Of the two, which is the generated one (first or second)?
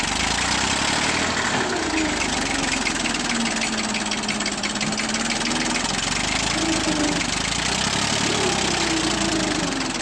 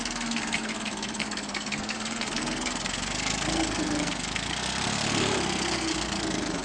second